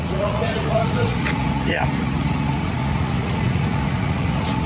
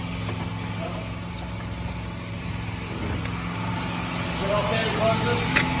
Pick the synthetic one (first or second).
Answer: first